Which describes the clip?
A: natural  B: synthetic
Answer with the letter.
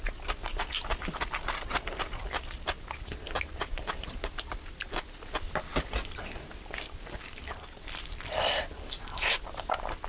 A